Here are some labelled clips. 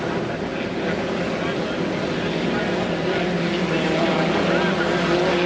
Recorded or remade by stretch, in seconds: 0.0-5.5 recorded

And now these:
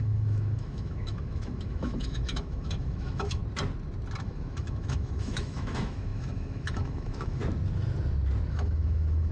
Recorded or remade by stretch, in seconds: 0.0-3.4 remade; 3.4-4.2 recorded; 4.2-7.4 remade; 7.4-8.5 recorded; 8.5-9.3 remade

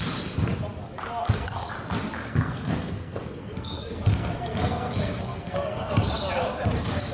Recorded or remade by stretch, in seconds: 0.0-1.2 recorded; 1.2-1.7 remade; 1.7-2.2 recorded; 2.2-6.1 remade; 6.1-7.1 recorded

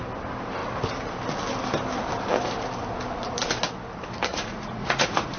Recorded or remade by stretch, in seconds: 0.0-4.3 recorded; 4.3-5.4 remade

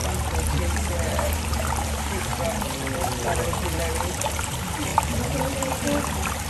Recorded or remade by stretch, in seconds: 0.0-0.9 recorded; 0.9-2.3 remade; 2.3-3.5 recorded; 3.5-4.9 remade; 4.9-6.5 recorded

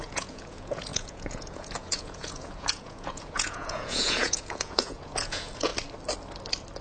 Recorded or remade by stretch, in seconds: 0.0-5.7 remade; 5.7-6.8 recorded

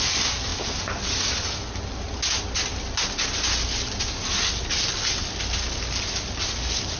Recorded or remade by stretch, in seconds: 0.0-7.0 recorded